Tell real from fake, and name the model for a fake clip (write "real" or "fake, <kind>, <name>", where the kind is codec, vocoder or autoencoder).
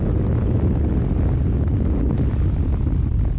real